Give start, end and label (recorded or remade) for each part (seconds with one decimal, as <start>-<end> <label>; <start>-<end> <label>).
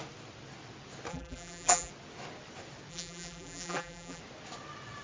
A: 0.0-1.1 recorded; 1.1-1.9 remade; 1.9-2.9 recorded; 2.9-4.2 remade; 4.2-5.0 recorded